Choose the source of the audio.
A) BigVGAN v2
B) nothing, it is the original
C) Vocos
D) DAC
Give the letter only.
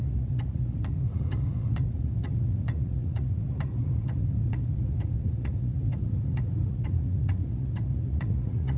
C